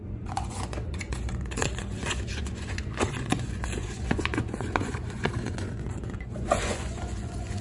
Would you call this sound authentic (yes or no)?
no